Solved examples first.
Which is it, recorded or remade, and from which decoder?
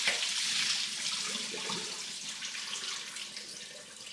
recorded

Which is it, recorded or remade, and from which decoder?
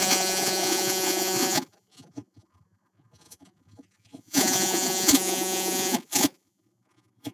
remade, vocoder, Vocos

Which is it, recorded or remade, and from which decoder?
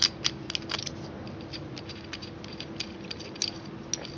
recorded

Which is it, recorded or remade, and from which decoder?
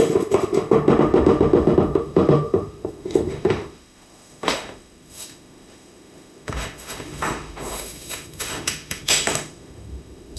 remade, autoencoder, DAC-VAE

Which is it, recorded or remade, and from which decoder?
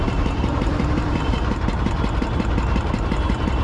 remade, vocoder, BigVGAN v2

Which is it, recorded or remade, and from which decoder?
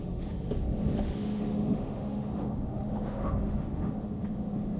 remade, autoencoder, DAC-VAE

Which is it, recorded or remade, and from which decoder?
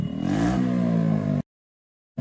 recorded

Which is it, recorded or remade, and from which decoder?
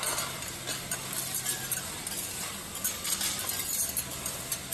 recorded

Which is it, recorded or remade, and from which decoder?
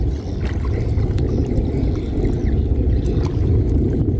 recorded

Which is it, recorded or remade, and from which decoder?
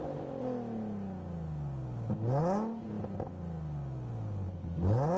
recorded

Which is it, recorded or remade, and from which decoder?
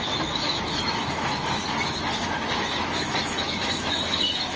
remade, autoencoder, DAC-VAE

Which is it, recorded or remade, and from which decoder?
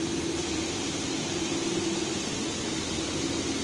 recorded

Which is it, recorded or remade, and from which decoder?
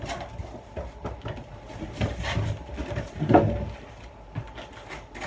recorded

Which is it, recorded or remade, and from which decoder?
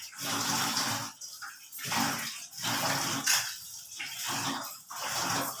recorded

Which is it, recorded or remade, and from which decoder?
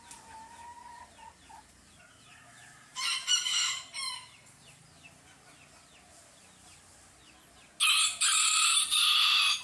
recorded